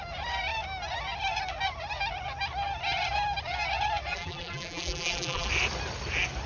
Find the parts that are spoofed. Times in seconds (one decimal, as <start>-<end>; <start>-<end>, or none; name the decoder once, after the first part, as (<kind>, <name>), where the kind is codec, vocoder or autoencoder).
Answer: 4.1-5.5 (vocoder, BigVGAN v2)